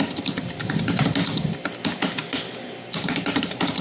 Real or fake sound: real